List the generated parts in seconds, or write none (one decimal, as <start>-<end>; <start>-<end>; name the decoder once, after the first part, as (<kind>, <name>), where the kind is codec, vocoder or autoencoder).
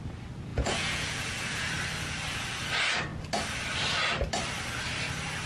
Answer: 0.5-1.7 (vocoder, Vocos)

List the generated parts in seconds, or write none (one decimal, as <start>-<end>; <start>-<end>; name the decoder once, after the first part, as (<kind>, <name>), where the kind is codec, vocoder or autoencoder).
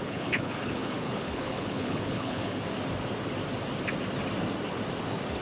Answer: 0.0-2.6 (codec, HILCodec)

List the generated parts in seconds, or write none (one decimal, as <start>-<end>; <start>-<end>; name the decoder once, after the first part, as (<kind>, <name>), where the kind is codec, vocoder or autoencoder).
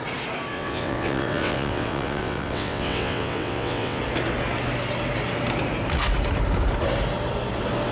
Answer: 0.5-4.0 (vocoder, WaveNeXt)